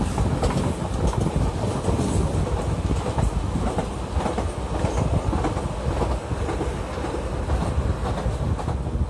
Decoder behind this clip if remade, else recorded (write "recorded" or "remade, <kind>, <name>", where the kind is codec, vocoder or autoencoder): recorded